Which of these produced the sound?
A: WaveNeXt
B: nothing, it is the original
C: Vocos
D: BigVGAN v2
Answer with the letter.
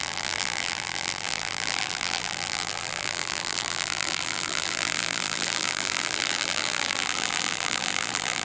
D